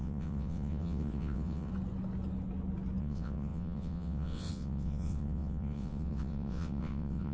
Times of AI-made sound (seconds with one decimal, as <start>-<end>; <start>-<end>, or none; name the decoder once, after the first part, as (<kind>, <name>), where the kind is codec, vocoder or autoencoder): 0.0-1.7 (vocoder, WaveNeXt); 3.0-7.3